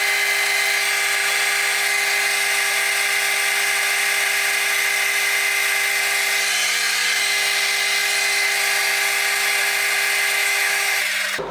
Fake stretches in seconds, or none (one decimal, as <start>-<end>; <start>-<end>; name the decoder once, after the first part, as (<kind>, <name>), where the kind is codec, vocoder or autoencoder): 10.4-11.0 (autoencoder, DAC-VAE)